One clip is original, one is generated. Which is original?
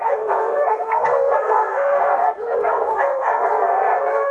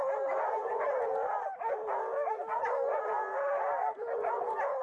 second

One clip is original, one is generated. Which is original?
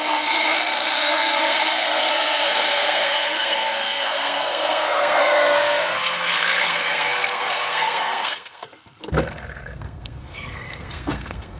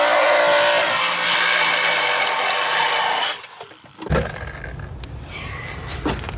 second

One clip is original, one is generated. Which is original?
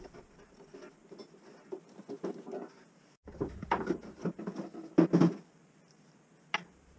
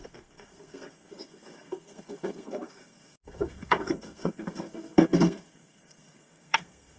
first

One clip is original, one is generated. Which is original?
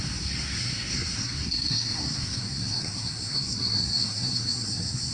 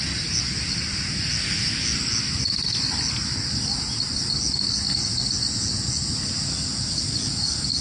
second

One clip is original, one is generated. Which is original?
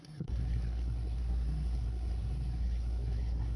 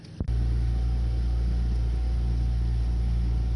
second